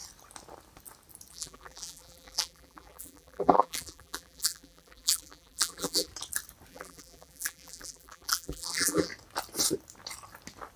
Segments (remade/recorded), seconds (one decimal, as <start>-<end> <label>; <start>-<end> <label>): 0.0-1.3 recorded; 1.3-6.1 remade; 6.1-6.7 recorded; 6.7-9.1 remade; 9.1-10.8 recorded